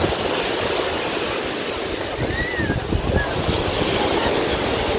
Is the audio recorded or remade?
recorded